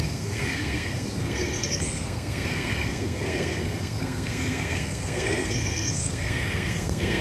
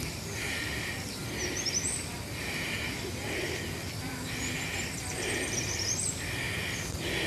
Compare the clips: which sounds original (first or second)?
second